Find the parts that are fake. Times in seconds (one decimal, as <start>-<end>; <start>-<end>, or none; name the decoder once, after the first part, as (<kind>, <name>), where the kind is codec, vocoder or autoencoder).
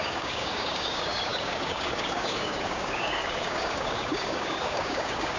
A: 0.0-5.4 (codec, DAC)